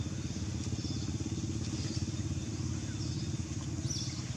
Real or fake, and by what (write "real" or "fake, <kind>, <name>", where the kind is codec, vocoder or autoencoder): real